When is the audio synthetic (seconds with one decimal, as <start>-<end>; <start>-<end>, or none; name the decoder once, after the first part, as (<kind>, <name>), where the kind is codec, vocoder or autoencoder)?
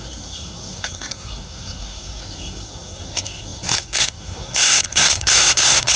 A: 0.0-6.0 (codec, SNAC)